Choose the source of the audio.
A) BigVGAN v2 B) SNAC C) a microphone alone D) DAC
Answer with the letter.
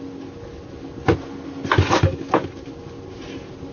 C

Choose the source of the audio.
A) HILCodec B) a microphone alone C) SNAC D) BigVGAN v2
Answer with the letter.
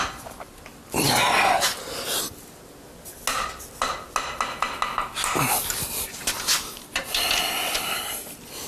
B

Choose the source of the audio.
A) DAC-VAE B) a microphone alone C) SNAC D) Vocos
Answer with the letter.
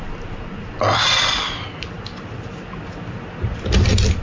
B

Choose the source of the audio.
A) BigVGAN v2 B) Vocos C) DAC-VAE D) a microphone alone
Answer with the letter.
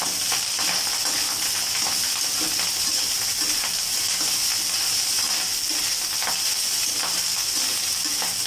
D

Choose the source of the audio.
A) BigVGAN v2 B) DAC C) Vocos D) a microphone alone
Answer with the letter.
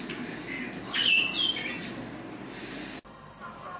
D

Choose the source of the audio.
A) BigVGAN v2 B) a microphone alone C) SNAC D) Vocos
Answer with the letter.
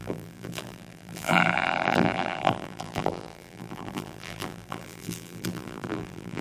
A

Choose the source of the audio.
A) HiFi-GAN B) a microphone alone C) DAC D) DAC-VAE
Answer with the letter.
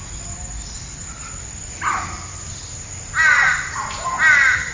B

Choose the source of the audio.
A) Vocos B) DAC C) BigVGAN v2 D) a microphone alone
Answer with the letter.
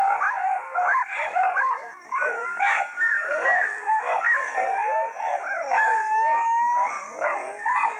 B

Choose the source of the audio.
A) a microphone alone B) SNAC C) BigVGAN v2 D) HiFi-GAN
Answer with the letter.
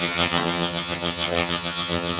D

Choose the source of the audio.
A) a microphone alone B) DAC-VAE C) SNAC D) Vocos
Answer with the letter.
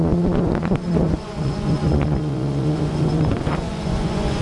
D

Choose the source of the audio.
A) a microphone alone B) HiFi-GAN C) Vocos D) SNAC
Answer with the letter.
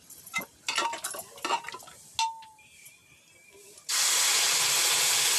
A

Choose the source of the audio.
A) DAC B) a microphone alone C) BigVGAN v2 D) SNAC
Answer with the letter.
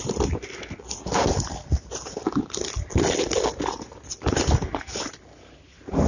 B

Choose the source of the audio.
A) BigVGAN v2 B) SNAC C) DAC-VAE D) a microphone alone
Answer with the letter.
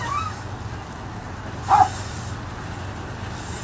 D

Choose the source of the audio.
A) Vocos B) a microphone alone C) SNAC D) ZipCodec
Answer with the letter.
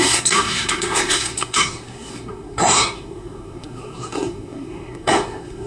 C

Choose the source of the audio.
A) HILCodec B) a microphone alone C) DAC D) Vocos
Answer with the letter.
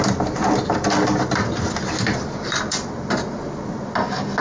B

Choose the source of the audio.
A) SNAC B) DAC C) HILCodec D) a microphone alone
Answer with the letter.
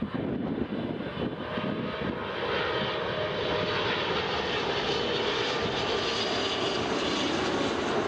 D